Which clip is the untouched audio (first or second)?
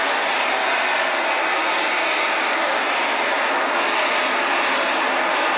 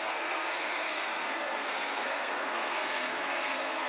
first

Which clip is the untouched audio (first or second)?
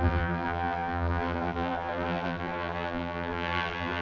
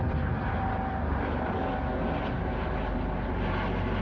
second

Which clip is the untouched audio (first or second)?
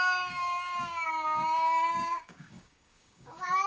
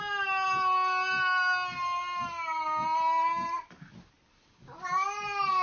second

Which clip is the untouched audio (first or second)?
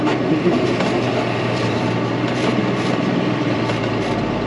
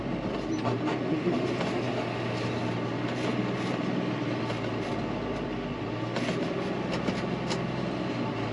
second